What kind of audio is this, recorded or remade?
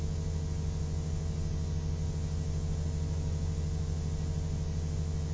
recorded